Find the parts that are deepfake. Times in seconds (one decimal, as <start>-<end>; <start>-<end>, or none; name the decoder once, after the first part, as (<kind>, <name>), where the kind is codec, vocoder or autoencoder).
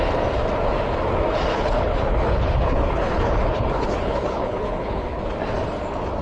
1.5-5.2 (codec, HILCodec)